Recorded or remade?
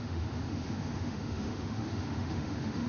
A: remade